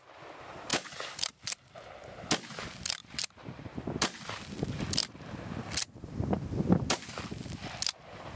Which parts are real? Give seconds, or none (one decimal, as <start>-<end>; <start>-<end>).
0.0-0.7; 1.7-3.0; 3.8-5.0; 7.2-8.4